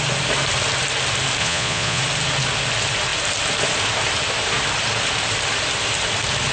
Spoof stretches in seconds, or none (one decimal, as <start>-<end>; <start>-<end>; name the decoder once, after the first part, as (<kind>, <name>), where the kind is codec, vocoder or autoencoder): 1.4-2.0 (vocoder, Vocos)